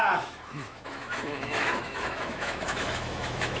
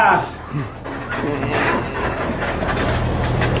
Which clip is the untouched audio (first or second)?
second